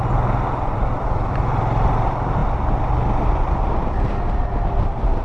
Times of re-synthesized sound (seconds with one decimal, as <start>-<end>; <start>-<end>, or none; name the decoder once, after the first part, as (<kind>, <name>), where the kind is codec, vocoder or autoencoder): none